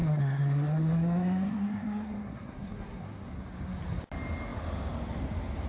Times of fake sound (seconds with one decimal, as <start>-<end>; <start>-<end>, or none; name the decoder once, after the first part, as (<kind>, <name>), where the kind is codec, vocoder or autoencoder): 0.0-3.4 (codec, SNAC)